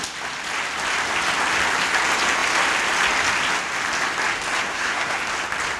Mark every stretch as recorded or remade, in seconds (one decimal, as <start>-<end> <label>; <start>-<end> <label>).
0.0-4.7 recorded; 4.7-5.2 remade; 5.2-5.8 recorded

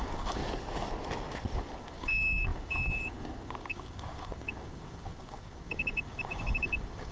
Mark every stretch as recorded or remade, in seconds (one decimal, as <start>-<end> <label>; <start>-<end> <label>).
0.0-0.4 remade; 0.4-1.6 recorded; 1.6-7.1 remade